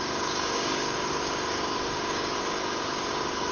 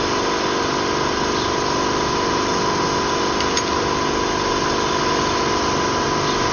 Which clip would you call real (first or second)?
second